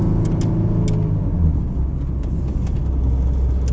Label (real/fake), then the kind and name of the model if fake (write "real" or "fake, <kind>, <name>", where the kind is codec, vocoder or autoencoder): real